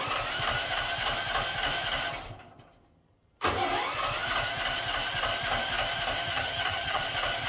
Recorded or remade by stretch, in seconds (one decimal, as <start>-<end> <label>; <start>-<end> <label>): 0.0-6.3 recorded; 6.3-7.0 remade; 7.0-7.5 recorded